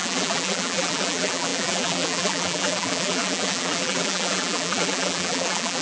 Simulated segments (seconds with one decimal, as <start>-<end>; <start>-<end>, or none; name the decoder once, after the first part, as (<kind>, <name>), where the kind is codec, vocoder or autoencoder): 0.0-5.8 (vocoder, BigVGAN v2)